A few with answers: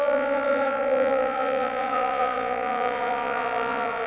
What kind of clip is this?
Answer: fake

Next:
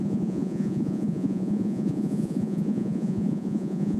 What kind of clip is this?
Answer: fake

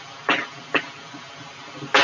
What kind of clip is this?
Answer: real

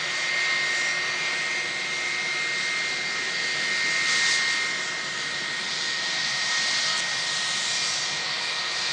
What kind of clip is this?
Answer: real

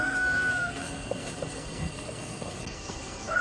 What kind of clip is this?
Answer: fake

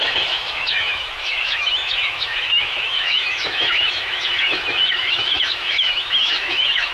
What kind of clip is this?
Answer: fake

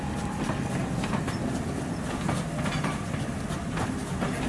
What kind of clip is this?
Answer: real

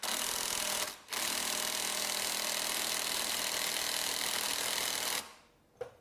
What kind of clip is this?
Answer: real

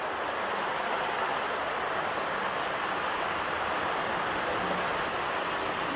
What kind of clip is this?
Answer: real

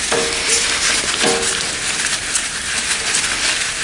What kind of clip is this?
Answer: real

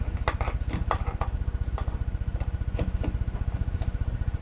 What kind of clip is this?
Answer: real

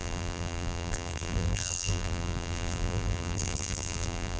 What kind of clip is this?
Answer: fake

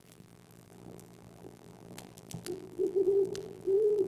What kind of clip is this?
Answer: fake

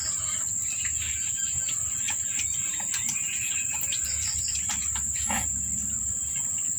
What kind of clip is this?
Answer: fake